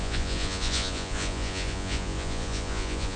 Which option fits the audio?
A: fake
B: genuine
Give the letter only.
A